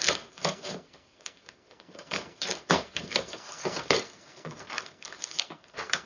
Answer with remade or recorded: remade